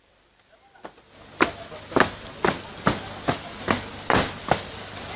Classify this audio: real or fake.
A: real